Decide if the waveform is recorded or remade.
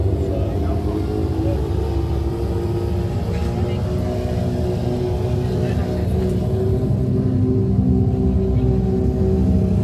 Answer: recorded